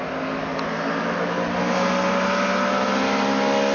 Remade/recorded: recorded